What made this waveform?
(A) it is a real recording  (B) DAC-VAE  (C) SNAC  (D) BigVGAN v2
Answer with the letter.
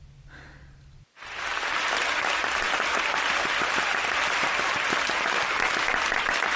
A